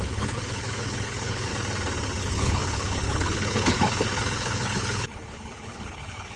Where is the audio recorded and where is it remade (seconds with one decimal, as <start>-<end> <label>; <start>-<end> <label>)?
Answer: 0.0-1.5 remade; 1.5-2.2 recorded; 2.2-6.4 remade